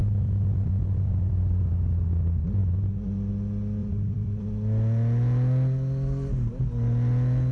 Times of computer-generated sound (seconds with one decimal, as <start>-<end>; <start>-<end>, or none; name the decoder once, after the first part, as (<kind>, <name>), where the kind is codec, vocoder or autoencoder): 0.0-1.7 (vocoder, BigVGAN v2); 3.8-4.4